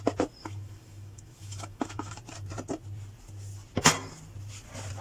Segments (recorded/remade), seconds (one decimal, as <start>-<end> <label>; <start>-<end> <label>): 0.0-0.4 recorded; 0.4-2.2 remade; 2.2-5.0 recorded